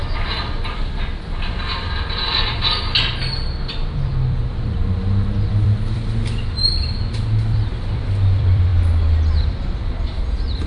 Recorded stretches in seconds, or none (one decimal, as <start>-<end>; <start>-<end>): 2.9-3.6; 8.7-9.4

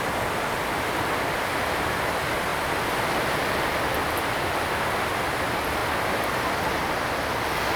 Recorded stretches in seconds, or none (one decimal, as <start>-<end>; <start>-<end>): 0.0-7.8